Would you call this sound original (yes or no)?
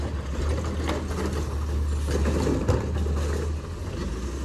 yes